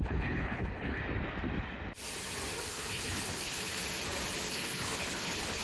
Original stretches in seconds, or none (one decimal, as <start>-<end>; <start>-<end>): 1.0-2.6; 3.8-4.5